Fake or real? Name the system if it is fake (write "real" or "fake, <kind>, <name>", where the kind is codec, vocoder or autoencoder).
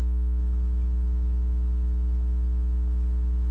real